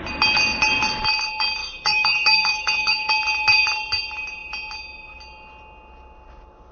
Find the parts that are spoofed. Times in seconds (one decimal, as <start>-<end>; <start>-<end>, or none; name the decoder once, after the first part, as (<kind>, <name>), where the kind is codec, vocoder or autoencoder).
1.6-3.1 (autoencoder, DAC-VAE)